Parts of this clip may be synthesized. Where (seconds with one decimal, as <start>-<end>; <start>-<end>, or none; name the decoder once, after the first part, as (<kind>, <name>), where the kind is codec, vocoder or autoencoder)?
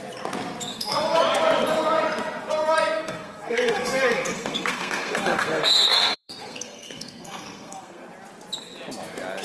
0.7-1.2 (codec, SNAC); 3.0-8.0